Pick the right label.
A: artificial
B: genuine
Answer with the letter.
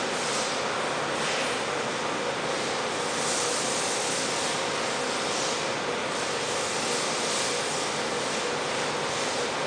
B